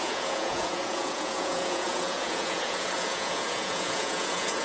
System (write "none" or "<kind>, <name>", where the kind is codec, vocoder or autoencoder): vocoder, Vocos